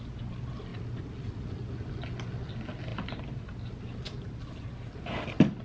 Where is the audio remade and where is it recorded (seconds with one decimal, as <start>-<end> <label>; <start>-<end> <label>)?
0.0-5.6 recorded